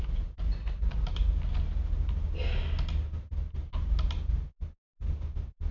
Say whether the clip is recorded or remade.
recorded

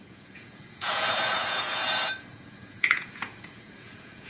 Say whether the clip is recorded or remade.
remade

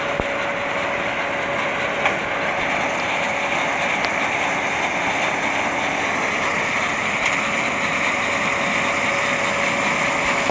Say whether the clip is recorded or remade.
recorded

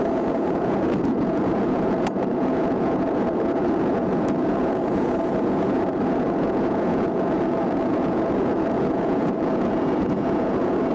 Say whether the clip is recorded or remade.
remade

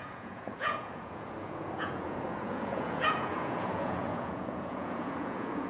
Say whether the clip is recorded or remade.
remade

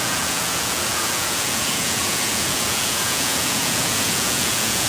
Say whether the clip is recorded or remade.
remade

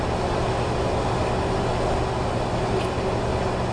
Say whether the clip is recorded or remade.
recorded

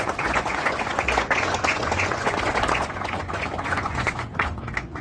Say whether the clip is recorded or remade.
remade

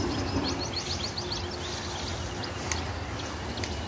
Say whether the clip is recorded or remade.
recorded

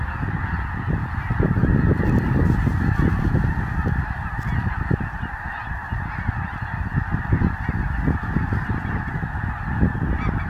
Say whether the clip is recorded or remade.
recorded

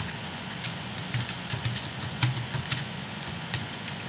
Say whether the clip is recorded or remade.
remade